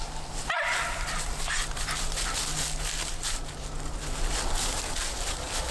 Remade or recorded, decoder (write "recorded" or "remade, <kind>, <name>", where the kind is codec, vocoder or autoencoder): recorded